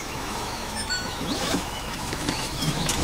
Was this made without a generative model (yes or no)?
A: no